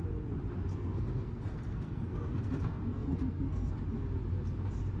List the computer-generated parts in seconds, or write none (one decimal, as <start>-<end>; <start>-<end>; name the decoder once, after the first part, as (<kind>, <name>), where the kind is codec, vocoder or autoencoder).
0.7-3.7 (codec, SNAC)